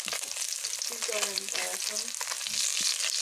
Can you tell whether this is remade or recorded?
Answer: recorded